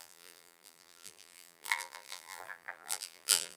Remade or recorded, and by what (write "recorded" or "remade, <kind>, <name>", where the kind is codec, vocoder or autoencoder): remade, vocoder, BigVGAN v2